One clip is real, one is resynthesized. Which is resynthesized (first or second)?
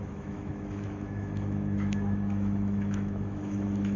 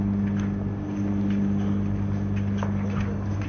first